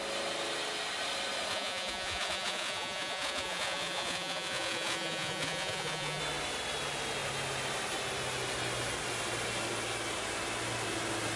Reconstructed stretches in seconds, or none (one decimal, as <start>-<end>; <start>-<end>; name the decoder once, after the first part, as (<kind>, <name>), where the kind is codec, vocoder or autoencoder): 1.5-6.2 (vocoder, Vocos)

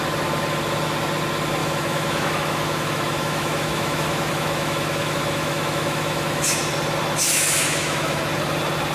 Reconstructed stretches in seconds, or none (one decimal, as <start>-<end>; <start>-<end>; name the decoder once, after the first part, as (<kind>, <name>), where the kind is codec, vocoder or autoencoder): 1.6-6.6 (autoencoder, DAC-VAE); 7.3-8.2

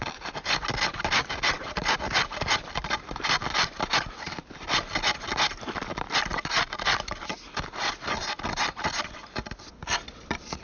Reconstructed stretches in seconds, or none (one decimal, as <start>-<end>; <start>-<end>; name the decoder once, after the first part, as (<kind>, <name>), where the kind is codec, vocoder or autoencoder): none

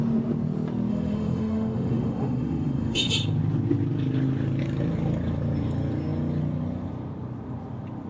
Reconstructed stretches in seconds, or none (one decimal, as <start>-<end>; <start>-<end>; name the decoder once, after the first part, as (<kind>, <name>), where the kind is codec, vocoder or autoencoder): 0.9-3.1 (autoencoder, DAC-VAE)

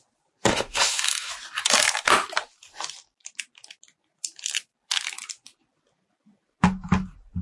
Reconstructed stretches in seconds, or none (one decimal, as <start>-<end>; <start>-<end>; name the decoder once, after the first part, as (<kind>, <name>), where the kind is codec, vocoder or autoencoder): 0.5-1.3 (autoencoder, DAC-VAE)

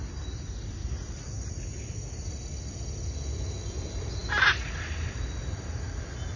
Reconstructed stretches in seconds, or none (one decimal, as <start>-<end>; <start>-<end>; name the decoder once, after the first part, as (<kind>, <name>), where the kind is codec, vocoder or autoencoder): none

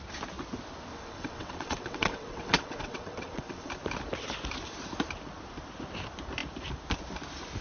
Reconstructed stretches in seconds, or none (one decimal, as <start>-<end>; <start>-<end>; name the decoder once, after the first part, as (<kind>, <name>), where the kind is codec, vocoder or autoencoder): 0.9-3.7 (vocoder, WaveNeXt)

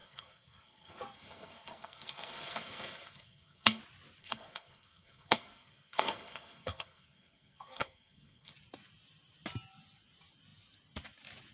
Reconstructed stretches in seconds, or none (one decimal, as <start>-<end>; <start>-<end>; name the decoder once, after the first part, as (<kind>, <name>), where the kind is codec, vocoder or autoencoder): 0.0-3.8 (codec, SNAC); 4.2-8.5